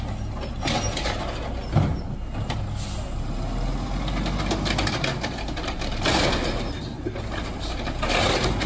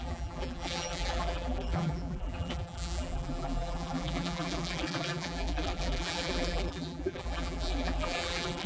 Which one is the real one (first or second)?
first